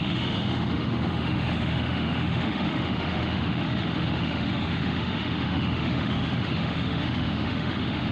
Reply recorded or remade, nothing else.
remade